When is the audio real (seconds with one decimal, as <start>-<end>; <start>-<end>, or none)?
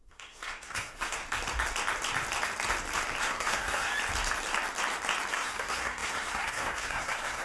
1.2-3.2; 3.9-5.3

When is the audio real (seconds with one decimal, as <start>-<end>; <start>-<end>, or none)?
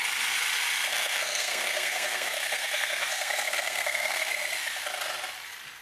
0.0-0.9; 4.3-5.8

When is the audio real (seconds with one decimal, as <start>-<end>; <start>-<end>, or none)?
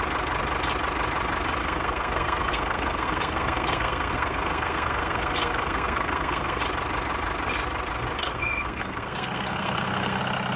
0.0-1.6; 6.6-8.2; 10.2-10.6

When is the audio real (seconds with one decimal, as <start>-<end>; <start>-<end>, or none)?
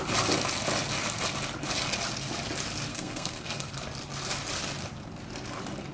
0.0-2.9; 3.7-5.9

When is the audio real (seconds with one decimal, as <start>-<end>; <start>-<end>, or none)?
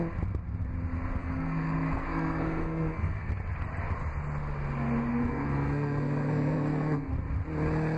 0.0-1.2; 3.3-5.1; 7.1-8.0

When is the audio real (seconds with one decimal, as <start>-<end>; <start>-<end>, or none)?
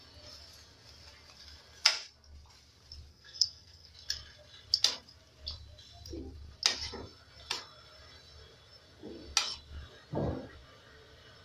0.0-3.1; 3.9-11.4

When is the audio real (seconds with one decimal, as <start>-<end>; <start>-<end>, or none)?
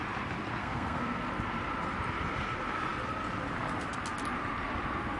0.0-0.6; 1.2-5.2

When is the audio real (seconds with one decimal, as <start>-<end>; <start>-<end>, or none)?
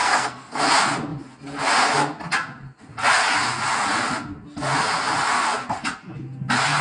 0.6-6.8